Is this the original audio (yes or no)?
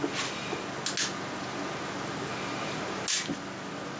yes